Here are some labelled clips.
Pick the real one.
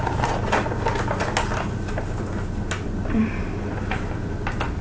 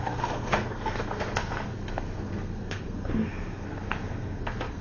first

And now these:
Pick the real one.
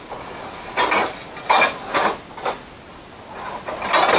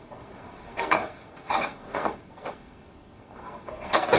first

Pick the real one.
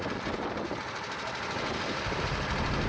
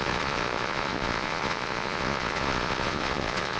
first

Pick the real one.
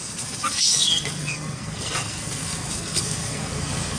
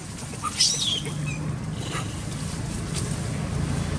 second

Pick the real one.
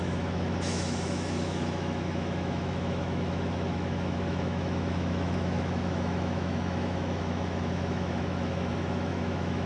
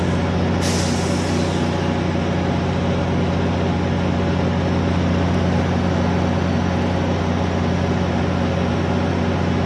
second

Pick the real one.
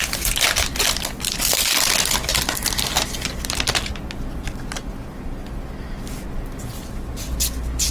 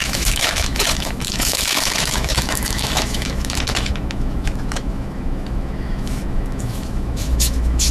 first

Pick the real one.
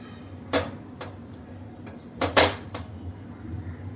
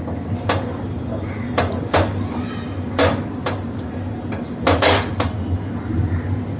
second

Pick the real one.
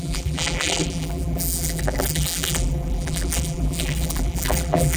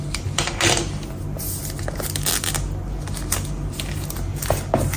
second